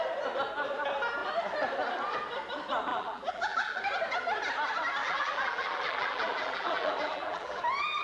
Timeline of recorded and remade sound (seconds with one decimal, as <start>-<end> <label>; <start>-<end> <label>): 0.0-2.9 recorded; 2.9-3.8 remade; 3.8-5.0 recorded; 5.0-7.6 remade; 7.6-8.0 recorded